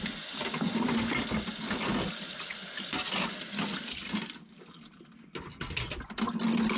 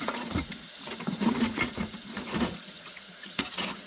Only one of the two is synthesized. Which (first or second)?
second